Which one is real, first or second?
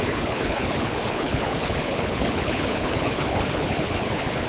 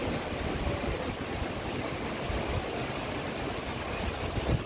second